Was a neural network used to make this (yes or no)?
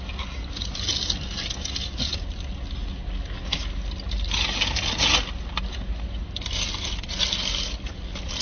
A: no